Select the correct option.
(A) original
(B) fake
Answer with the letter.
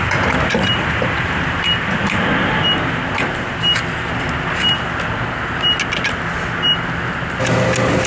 A